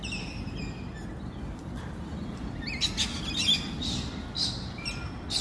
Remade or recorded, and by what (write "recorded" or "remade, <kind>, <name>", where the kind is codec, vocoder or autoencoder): recorded